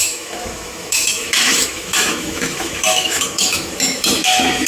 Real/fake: fake